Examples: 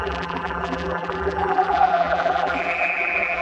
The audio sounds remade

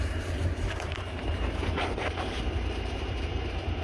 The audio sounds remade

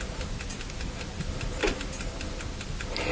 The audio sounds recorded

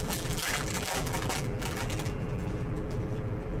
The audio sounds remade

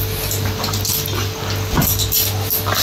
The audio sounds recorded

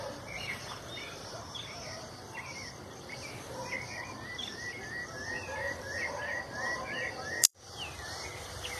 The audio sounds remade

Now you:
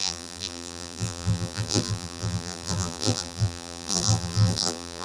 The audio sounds remade